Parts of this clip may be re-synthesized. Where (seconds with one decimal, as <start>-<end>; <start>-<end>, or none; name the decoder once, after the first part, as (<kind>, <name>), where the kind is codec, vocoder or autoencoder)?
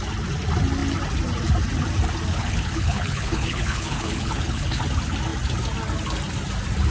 2.3-4.8 (codec, HILCodec)